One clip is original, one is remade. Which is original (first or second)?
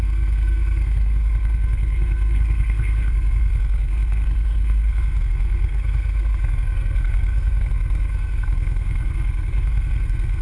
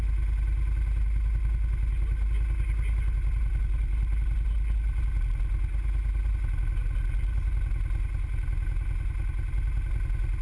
second